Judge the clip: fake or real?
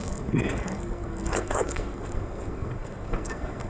fake